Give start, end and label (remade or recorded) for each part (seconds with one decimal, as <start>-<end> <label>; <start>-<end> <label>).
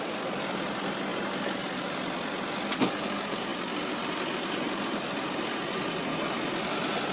0.0-7.1 recorded